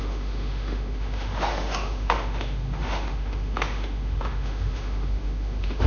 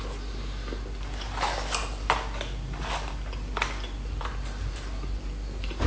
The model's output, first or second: first